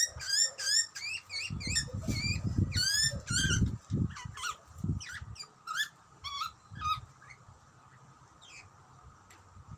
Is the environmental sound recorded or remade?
recorded